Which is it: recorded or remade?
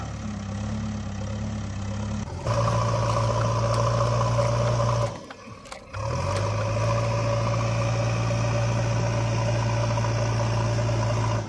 recorded